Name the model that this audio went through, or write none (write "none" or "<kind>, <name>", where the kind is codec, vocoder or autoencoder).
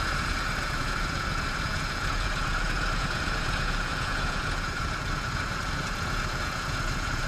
vocoder, Vocos